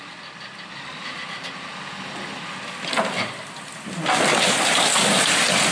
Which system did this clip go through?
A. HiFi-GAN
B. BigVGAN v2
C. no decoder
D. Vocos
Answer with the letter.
C